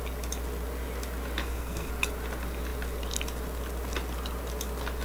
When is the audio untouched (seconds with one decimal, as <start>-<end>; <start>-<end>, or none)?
0.0-1.4; 1.9-5.0